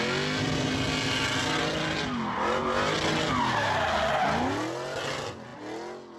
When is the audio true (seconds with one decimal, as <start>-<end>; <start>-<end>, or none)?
0.0-6.2